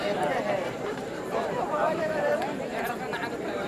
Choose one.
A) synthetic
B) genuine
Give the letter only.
A